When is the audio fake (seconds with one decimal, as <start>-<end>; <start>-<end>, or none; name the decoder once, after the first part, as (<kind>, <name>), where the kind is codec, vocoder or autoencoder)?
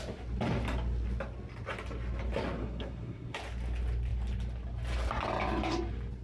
2.6-3.4 (codec, SNAC)